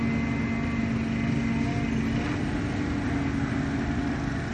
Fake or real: real